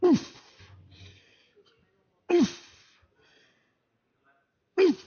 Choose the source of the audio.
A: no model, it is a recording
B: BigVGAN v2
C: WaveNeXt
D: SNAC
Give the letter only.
A